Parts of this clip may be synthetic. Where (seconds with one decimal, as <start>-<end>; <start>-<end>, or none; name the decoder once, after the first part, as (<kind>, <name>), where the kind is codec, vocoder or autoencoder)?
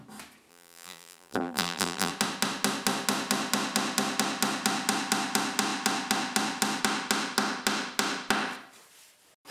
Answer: 0.5-2.1 (vocoder, BigVGAN v2)